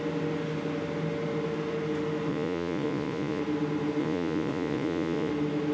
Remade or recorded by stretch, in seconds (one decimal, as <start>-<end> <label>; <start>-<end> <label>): 0.0-2.3 recorded; 2.3-3.4 remade; 3.4-4.0 recorded; 4.0-5.3 remade; 5.3-5.7 recorded